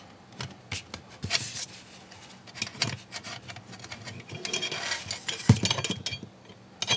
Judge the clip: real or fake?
real